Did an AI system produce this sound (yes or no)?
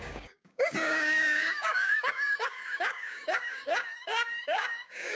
yes